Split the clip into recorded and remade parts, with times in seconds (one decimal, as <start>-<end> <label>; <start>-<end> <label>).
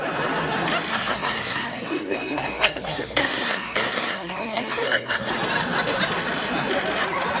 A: 0.0-0.9 recorded; 0.9-5.3 remade; 5.3-7.4 recorded